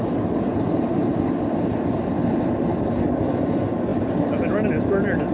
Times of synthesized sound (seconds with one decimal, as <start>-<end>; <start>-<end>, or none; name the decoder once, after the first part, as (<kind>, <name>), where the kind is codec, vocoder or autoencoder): none